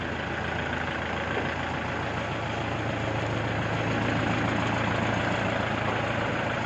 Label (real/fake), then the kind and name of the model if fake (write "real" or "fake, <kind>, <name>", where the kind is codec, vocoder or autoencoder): real